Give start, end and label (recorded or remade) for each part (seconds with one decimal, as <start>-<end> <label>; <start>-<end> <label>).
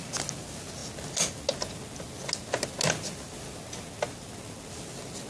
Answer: 0.0-5.3 recorded